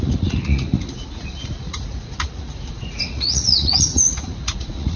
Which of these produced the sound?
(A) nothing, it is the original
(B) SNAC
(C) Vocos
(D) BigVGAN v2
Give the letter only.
C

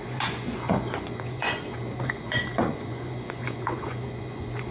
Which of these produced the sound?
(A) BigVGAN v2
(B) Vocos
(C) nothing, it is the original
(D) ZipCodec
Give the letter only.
B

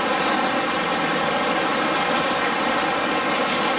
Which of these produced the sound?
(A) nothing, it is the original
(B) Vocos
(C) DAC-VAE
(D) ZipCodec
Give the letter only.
A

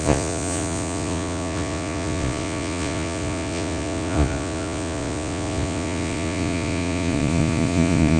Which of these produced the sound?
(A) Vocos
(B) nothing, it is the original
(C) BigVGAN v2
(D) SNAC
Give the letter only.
A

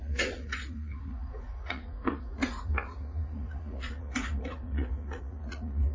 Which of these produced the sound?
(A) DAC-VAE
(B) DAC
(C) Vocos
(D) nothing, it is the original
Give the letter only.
C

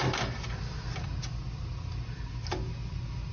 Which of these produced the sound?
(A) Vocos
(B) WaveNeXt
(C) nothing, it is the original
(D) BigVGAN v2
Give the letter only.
C